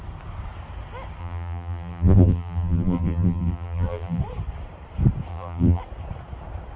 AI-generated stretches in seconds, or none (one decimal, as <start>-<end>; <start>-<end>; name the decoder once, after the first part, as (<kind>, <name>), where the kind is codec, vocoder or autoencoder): 1.2-4.2 (vocoder, BigVGAN v2); 5.3-5.8